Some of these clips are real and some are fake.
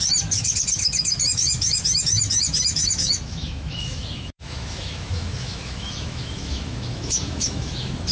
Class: fake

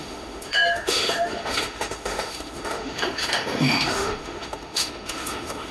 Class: fake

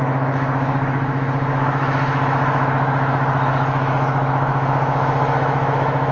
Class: fake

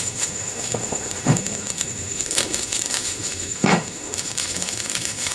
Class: fake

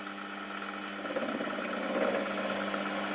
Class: real